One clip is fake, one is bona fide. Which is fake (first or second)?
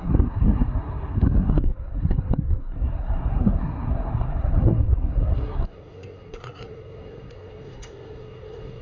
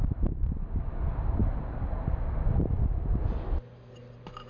first